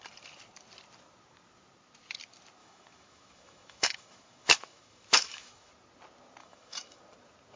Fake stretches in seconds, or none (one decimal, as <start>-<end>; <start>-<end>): 2.6-5.7; 6.4-7.0